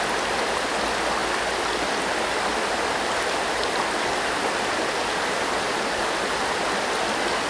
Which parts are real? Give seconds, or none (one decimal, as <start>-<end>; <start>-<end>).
0.0-7.5